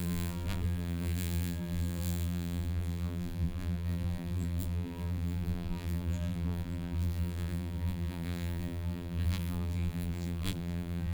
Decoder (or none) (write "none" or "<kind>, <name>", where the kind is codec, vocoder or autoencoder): vocoder, BigVGAN v2